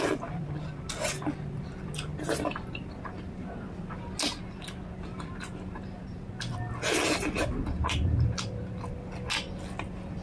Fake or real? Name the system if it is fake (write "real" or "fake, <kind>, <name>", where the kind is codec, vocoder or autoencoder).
real